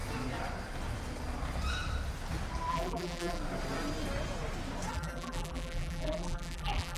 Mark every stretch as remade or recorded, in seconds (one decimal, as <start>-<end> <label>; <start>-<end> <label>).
0.0-2.7 recorded; 2.7-3.4 remade; 3.4-4.9 recorded; 4.9-7.0 remade